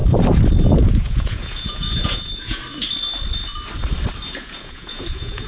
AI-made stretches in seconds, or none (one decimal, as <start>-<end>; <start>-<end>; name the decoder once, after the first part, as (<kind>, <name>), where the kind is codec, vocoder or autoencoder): 0.9-2.6 (vocoder, Vocos); 4.3-5.5